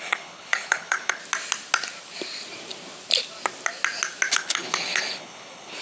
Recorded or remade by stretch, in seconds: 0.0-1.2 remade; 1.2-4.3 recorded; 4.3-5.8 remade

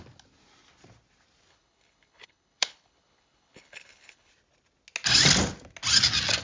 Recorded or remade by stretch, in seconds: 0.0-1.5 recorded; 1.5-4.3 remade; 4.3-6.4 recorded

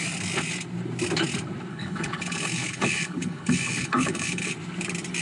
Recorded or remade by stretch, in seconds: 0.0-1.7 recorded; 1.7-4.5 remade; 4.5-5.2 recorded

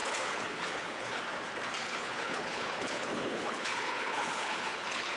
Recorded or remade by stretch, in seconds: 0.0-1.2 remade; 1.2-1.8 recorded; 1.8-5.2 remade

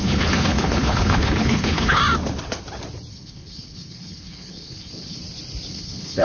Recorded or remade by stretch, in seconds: 0.0-2.0 remade; 2.0-3.1 recorded; 3.1-5.2 remade; 5.2-5.7 recorded; 5.7-6.2 remade

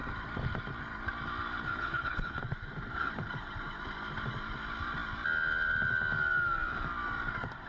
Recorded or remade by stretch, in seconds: 0.0-1.7 recorded; 1.7-2.4 remade; 2.4-7.7 recorded

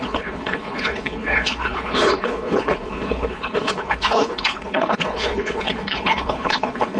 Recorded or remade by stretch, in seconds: 0.0-7.0 remade

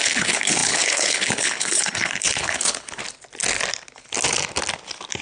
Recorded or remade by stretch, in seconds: 0.0-3.0 remade; 3.0-5.2 recorded